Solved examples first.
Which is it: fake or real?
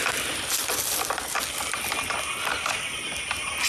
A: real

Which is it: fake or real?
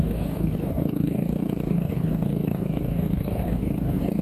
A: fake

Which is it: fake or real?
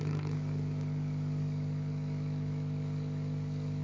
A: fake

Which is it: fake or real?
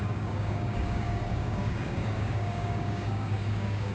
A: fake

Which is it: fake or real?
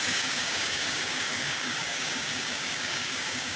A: fake